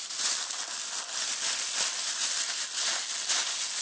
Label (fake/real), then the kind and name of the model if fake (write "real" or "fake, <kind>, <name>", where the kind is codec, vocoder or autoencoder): real